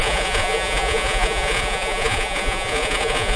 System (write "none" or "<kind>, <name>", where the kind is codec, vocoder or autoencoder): vocoder, Vocos